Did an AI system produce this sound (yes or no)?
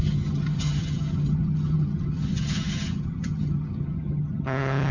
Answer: yes